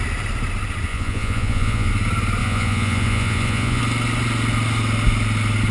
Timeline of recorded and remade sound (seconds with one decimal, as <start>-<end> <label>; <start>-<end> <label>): 0.0-0.9 recorded; 0.9-1.9 remade; 1.9-2.4 recorded; 2.4-3.8 remade; 3.8-5.7 recorded